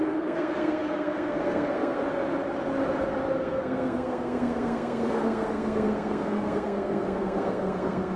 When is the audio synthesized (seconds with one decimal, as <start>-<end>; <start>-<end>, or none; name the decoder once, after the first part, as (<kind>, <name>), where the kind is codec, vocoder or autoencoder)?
0.0-2.0 (codec, SNAC); 3.4-8.2